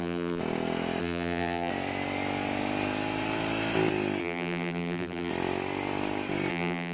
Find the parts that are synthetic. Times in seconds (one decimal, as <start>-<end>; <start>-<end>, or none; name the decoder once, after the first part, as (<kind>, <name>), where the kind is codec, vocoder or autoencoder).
0.0-0.4 (vocoder, BigVGAN v2); 1.0-1.7; 4.2-5.3; 6.5-6.9